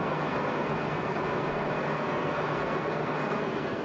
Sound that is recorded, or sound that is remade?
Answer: remade